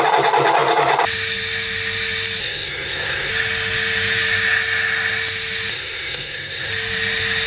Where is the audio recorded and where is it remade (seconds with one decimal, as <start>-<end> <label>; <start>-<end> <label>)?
0.0-2.4 recorded; 2.4-3.3 remade; 3.3-5.7 recorded; 5.7-6.7 remade; 6.7-7.5 recorded